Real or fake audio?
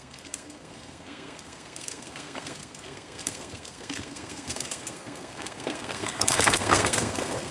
fake